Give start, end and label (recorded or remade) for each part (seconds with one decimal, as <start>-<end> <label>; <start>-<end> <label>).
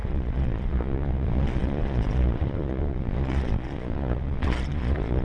0.0-5.2 remade